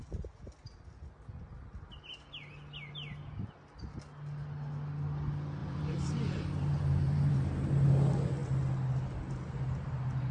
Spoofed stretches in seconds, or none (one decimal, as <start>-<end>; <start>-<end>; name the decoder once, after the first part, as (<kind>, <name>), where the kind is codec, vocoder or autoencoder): 5.6-7.9 (vocoder, BigVGAN v2)